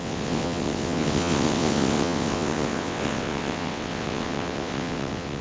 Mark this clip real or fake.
fake